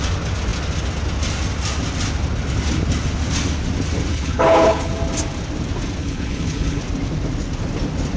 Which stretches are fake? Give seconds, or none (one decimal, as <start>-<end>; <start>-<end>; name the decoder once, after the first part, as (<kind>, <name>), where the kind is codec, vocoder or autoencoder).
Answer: 4.1-4.9 (codec, HILCodec); 6.0-6.8